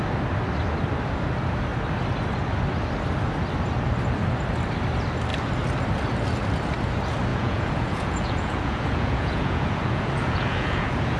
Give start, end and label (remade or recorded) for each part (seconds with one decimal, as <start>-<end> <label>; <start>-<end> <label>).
0.0-7.3 recorded; 7.3-11.2 remade